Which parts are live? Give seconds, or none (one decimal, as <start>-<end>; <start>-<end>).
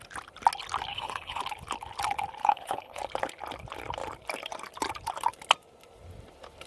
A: 0.0-0.9; 1.4-2.4; 3.0-6.7